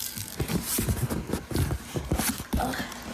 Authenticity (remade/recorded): recorded